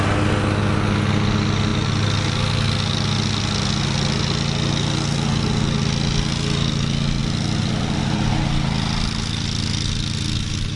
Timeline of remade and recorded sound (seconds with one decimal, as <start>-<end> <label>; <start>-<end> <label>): 0.0-7.2 recorded; 7.2-8.0 remade; 8.0-10.8 recorded